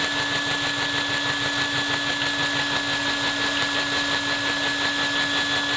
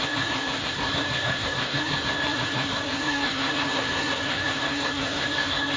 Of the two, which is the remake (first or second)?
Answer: second